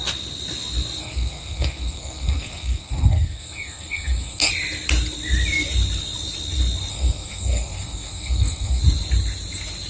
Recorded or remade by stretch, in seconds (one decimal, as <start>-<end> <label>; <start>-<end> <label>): 0.0-1.0 recorded; 1.0-4.5 remade; 4.5-6.9 recorded; 6.9-8.8 remade; 8.8-9.9 recorded